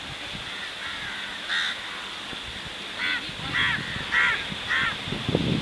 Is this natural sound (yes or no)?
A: yes